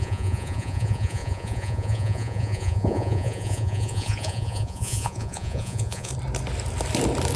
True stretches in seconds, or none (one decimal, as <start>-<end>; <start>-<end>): 6.1-7.4